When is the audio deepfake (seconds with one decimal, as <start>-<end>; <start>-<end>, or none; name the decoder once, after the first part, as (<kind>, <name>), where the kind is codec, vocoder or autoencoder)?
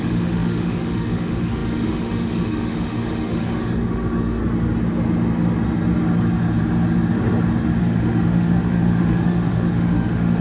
0.0-4.4 (autoencoder, DAC-VAE); 7.8-10.4